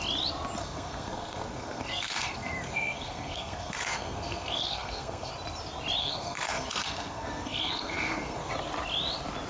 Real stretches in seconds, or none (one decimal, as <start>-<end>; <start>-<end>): 0.0-0.6; 5.3-6.0; 8.5-9.5